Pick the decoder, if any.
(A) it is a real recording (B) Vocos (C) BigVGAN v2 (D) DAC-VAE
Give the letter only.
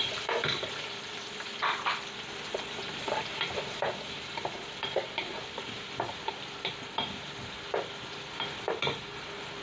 C